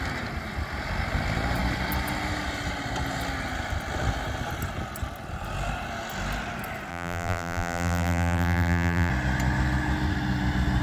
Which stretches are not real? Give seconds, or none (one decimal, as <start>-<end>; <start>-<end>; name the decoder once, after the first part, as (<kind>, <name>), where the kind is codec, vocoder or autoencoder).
6.9-9.1 (vocoder, BigVGAN v2)